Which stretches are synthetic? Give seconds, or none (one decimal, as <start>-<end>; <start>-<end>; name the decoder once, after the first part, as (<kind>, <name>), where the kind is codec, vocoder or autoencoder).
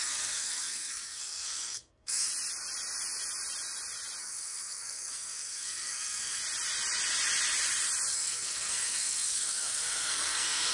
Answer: 0.0-2.3 (codec, SNAC); 4.2-6.4; 8.1-10.7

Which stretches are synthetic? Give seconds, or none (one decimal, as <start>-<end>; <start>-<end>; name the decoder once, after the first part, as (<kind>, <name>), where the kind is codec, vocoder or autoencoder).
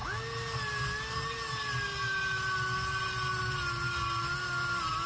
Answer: none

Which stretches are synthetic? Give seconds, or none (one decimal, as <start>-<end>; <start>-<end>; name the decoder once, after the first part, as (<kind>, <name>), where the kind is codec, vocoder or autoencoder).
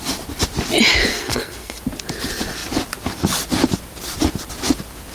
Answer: 1.1-1.8 (codec, SNAC)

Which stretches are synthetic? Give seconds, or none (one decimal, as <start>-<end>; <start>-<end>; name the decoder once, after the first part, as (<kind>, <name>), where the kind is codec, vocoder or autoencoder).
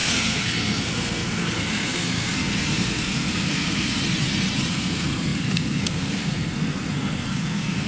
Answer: 0.0-4.0 (codec, SNAC); 4.7-7.9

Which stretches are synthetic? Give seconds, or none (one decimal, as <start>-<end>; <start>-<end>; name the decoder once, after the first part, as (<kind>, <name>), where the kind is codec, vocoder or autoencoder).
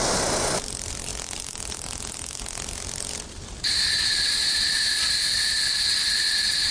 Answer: none